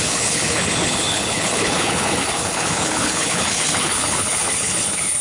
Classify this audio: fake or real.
fake